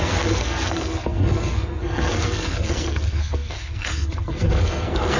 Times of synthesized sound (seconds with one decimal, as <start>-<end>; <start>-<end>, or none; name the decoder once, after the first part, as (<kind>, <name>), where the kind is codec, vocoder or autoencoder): 0.0-5.2 (codec, SNAC)